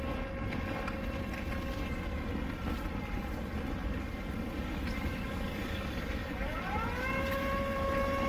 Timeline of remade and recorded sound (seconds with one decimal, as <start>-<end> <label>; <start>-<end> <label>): 0.0-5.1 recorded; 5.1-6.6 remade; 6.6-8.3 recorded